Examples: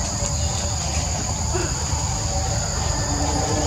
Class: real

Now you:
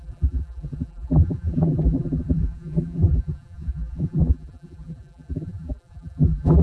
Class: fake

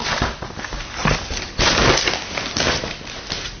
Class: real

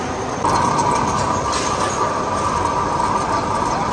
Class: fake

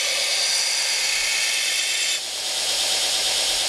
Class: real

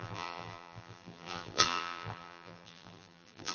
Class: fake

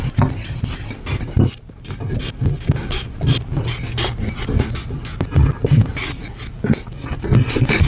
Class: real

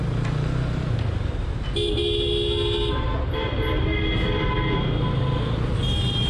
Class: real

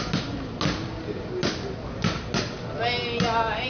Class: real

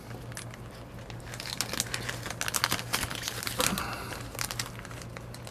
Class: real